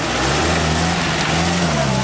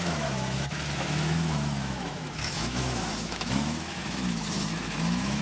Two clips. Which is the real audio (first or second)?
first